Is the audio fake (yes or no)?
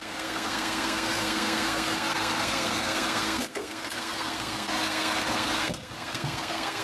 yes